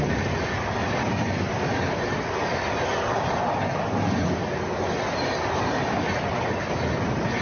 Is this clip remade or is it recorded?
recorded